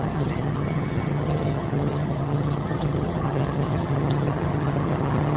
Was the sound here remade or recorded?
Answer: remade